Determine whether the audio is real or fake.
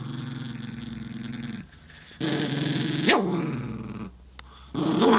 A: real